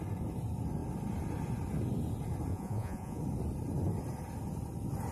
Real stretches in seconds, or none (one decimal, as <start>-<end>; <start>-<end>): 0.0-2.5; 3.2-5.1